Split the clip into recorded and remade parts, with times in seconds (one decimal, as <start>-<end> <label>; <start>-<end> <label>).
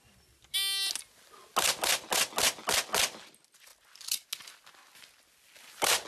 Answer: 0.0-6.1 recorded